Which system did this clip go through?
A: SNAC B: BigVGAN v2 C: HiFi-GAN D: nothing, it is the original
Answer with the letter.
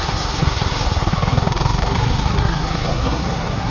A